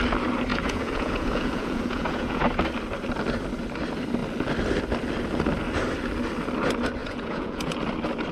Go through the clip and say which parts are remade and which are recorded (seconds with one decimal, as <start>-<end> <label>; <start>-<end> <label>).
0.0-0.5 recorded; 0.5-2.4 remade; 2.4-7.0 recorded; 7.0-7.8 remade; 7.8-8.3 recorded